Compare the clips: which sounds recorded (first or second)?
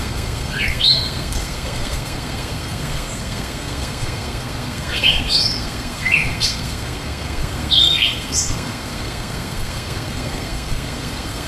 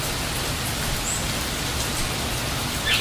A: second